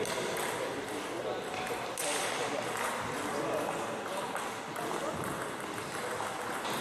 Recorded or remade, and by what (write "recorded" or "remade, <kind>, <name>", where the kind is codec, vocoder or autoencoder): recorded